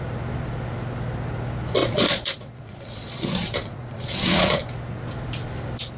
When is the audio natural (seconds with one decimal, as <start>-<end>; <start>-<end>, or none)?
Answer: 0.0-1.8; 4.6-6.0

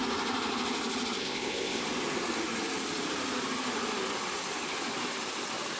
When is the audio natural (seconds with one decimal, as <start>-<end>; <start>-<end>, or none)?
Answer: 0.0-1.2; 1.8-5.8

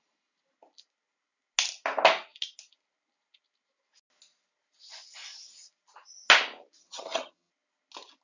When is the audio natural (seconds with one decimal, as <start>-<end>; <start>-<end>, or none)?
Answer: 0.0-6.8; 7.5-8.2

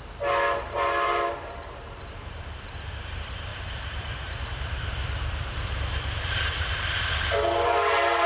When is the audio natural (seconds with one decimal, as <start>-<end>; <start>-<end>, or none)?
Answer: none

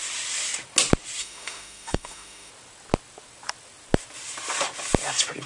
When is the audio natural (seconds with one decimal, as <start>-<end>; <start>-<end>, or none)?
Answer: 0.0-1.2; 2.5-5.5